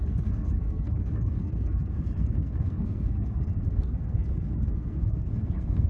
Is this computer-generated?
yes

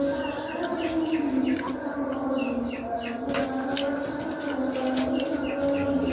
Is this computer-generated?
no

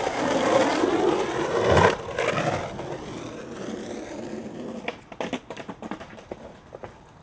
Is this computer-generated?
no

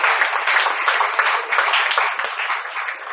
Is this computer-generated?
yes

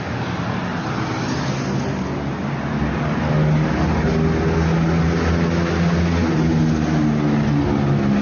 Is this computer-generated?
no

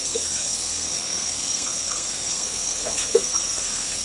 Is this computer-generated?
yes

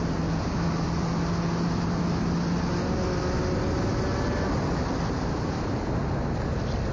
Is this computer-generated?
no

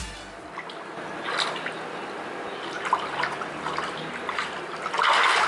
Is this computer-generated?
no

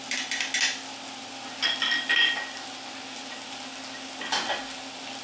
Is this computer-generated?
no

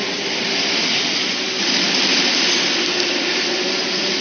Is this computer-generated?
no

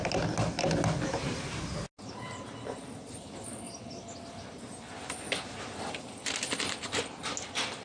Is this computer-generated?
no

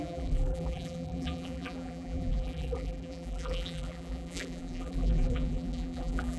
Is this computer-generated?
yes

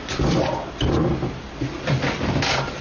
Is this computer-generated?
no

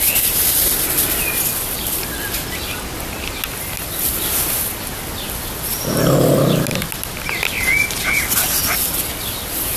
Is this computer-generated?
no